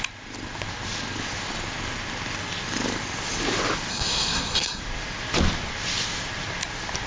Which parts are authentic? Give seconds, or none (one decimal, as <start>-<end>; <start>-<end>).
0.0-3.9; 4.8-7.1